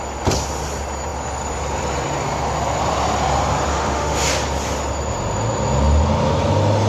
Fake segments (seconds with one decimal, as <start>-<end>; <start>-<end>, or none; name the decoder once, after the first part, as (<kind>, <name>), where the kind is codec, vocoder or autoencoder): 3.7-4.3 (autoencoder, DAC-VAE)